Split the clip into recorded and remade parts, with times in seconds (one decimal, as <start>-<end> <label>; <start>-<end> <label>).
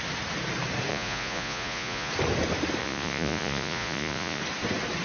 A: 0.0-0.9 recorded; 0.9-2.1 remade; 2.1-2.8 recorded; 2.8-4.4 remade; 4.4-5.0 recorded